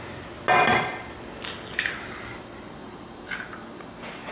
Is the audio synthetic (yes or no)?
no